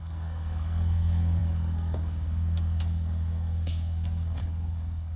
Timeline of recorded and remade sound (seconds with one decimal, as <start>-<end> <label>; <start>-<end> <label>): 0.0-5.2 remade

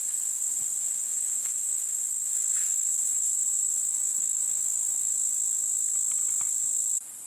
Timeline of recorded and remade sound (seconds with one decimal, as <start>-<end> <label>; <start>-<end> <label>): 0.0-1.1 recorded; 1.1-2.0 remade; 2.0-2.6 recorded; 2.6-5.1 remade; 5.1-7.3 recorded